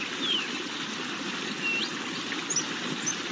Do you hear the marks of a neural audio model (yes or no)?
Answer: no